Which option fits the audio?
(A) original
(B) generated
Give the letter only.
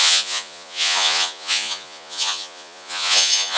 B